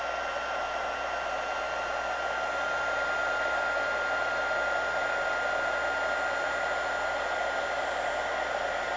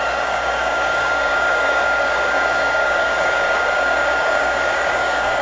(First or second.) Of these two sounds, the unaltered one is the first